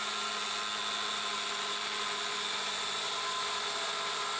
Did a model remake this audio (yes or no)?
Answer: no